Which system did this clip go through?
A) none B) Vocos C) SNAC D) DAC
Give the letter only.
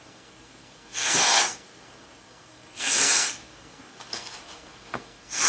C